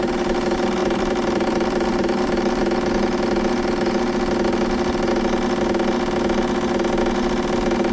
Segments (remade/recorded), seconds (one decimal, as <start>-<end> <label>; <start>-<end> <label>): 0.0-0.8 recorded; 0.8-2.6 remade; 2.6-7.9 recorded